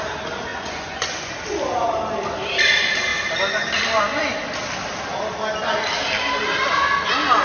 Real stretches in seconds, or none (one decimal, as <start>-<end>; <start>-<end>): 0.0-0.5; 1.3-7.4